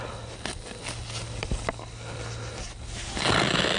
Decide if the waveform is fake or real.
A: real